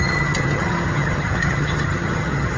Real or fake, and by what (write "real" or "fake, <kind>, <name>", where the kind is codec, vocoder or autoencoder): fake, vocoder, HiFi-GAN